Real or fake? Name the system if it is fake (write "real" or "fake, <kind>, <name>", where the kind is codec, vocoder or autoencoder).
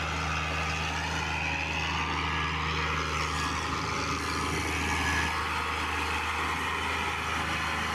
real